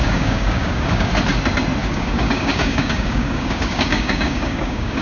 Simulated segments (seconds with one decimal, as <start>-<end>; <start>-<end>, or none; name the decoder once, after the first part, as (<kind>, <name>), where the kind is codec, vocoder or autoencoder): 0.0-1.1 (codec, DAC); 1.8-5.0